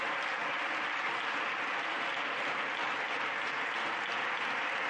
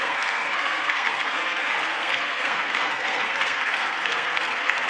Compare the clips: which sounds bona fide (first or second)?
first